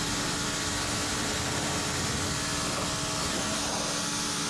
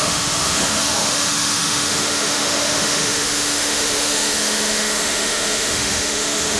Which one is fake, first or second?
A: second